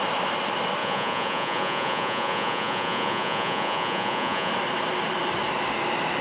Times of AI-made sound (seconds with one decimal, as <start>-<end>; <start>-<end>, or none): 0.8-4.5